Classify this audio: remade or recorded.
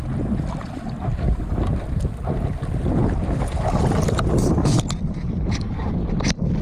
recorded